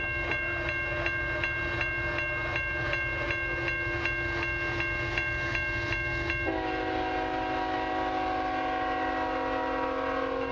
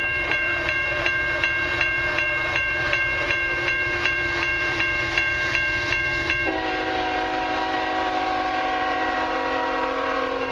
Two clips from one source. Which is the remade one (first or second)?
second